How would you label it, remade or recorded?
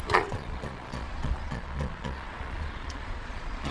remade